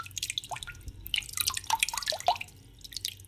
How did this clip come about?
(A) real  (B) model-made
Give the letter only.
A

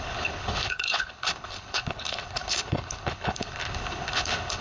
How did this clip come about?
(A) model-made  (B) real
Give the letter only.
A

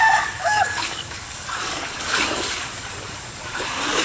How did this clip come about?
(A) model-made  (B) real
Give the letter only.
A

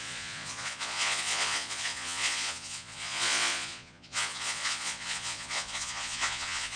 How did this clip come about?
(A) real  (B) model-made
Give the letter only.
B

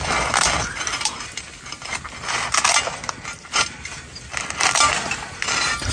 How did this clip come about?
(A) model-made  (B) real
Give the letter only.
B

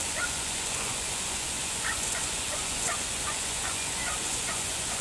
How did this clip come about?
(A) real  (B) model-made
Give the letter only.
B